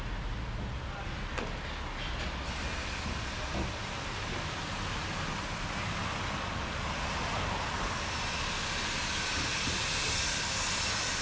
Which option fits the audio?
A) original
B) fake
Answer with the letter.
A